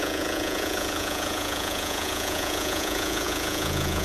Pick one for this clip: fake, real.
fake